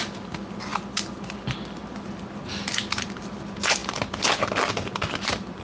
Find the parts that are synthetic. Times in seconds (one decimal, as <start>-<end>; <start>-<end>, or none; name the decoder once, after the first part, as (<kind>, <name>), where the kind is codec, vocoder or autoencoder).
none

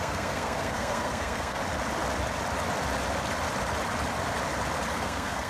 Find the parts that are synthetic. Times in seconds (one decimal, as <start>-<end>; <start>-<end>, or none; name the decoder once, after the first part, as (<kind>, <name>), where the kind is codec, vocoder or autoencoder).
0.0-1.6 (codec, SNAC); 4.9-5.5

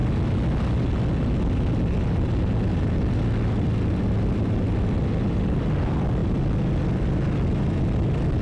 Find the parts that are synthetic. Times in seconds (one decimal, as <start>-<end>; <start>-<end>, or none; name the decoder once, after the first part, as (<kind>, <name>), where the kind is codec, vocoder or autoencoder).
none